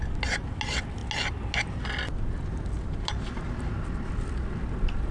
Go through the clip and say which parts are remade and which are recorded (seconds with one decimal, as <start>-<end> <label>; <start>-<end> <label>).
0.0-5.1 recorded